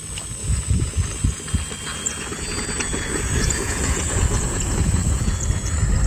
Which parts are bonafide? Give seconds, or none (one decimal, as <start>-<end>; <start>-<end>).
0.0-0.4; 0.9-2.3; 5.5-6.1